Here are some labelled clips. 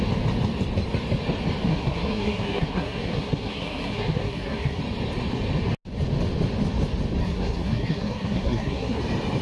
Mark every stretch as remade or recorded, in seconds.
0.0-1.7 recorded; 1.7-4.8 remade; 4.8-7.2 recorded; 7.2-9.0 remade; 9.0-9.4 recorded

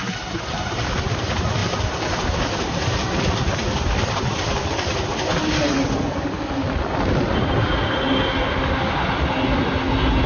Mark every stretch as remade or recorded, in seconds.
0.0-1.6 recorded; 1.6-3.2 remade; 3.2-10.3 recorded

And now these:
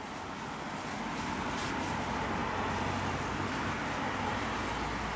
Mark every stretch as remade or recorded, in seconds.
0.0-5.2 recorded